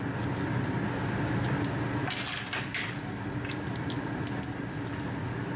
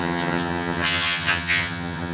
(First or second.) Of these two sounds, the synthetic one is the second